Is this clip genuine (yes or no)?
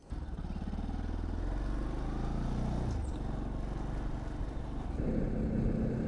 yes